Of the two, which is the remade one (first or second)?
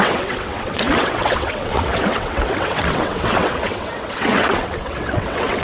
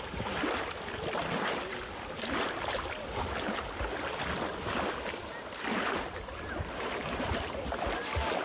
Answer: first